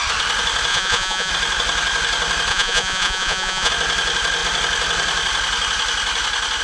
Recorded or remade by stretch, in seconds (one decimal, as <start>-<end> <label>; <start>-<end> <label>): 0.0-0.7 recorded; 0.7-1.3 remade; 1.3-2.5 recorded; 2.5-3.7 remade; 3.7-6.6 recorded